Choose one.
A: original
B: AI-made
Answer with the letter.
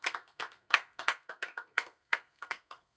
B